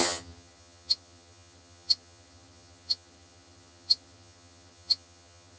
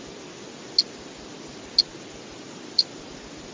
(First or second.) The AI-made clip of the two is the first